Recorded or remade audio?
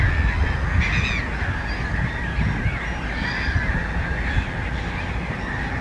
recorded